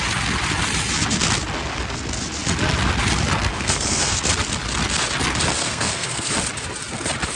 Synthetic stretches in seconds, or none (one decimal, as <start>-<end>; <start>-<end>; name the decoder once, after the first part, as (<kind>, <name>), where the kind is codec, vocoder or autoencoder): 3.5-4.2 (codec, SNAC); 5.6-6.3